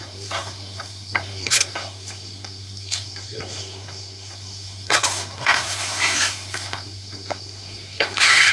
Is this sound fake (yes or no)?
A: yes